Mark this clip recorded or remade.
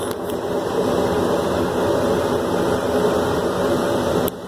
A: recorded